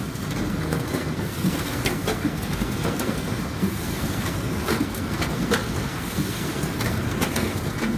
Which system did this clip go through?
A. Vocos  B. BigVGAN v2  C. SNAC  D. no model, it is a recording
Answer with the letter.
C